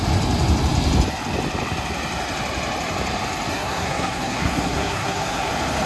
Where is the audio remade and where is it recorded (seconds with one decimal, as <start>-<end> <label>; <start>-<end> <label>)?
0.0-3.5 recorded; 3.5-5.5 remade; 5.5-5.9 recorded